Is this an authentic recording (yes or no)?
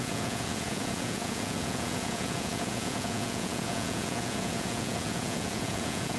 no